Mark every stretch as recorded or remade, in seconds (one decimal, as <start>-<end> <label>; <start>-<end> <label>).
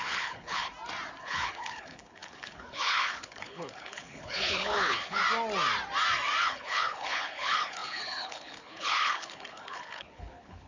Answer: 0.0-0.7 remade; 0.7-1.2 recorded; 1.2-5.2 remade; 5.2-6.4 recorded; 6.4-10.7 remade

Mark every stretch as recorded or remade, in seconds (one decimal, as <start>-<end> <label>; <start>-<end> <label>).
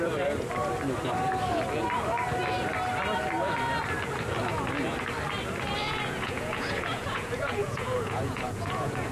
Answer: 0.0-5.8 recorded; 5.8-9.1 remade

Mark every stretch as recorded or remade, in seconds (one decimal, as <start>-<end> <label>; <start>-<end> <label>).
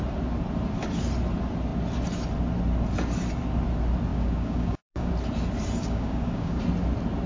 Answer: 0.0-4.1 recorded; 4.1-5.1 remade; 5.1-5.8 recorded; 5.8-6.6 remade; 6.6-7.3 recorded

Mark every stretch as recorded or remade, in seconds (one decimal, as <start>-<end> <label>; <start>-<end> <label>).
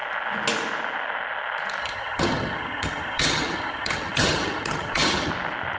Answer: 0.0-1.8 recorded; 1.8-5.3 remade; 5.3-5.8 recorded